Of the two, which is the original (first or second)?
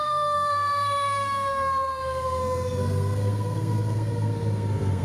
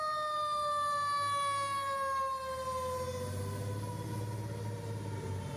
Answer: second